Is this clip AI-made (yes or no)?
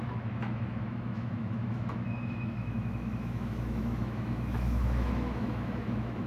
yes